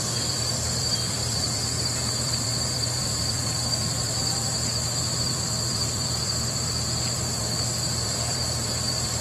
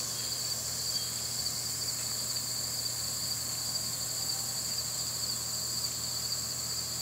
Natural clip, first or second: second